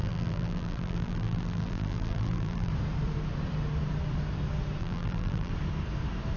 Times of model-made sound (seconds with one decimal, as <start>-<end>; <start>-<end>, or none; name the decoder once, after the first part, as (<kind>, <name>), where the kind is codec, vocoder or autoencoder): 0.0-2.7 (vocoder, BigVGAN v2); 4.8-5.5